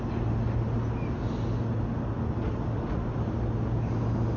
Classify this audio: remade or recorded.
recorded